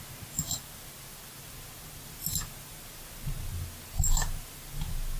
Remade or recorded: recorded